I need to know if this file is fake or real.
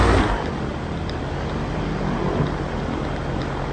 real